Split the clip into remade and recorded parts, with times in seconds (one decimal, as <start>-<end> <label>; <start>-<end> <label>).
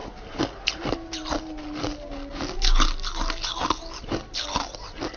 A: 0.0-5.2 recorded